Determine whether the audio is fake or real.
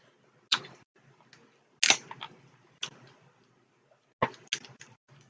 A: real